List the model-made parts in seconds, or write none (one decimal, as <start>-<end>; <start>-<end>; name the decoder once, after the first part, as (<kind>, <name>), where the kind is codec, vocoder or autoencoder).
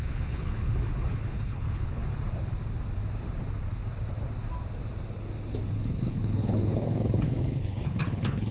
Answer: 0.0-2.0 (codec, HILCodec); 5.7-8.5